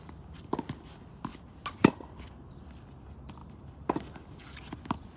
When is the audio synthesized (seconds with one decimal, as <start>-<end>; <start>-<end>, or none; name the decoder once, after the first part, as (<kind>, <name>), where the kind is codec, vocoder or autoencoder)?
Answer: none